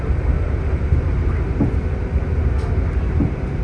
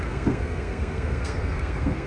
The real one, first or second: first